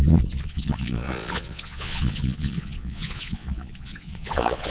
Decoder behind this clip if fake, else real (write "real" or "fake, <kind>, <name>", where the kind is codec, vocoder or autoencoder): fake, vocoder, Vocos